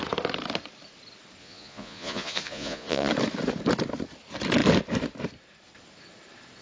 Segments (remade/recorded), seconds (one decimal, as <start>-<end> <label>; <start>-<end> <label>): 0.0-1.4 recorded; 1.4-3.1 remade; 3.1-6.6 recorded